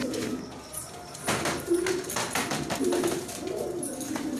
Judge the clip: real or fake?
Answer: real